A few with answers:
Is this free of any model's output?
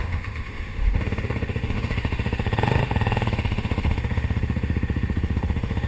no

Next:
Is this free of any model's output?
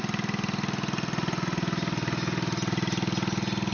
yes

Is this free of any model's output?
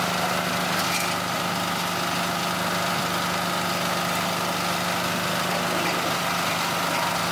yes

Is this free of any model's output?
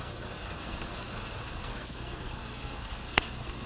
no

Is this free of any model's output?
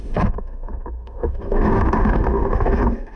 no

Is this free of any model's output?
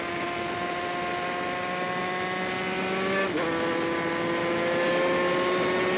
yes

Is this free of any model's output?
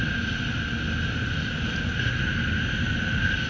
yes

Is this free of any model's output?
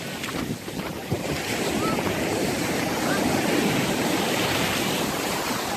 yes